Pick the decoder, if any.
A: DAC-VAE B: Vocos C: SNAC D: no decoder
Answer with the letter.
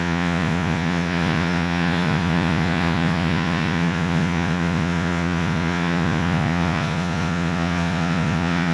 B